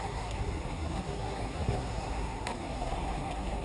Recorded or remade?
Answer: remade